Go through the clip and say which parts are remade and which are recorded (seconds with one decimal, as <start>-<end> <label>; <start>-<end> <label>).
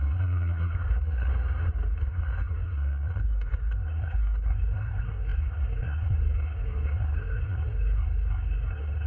0.0-1.3 remade; 1.3-2.0 recorded; 2.0-9.1 remade